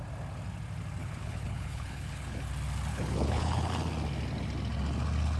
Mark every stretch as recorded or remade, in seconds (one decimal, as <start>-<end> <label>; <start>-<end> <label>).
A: 0.0-1.0 recorded; 1.0-2.5 remade; 2.5-2.9 recorded; 2.9-3.7 remade; 3.7-5.4 recorded